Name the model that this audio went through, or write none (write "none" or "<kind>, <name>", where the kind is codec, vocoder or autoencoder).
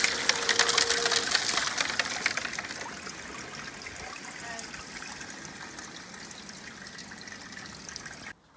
none